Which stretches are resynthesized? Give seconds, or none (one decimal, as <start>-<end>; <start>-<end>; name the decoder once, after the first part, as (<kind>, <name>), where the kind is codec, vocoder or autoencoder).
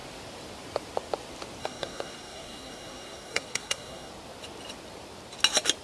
1.6-4.1 (codec, SNAC)